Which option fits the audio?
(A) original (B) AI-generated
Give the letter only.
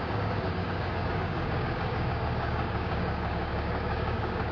B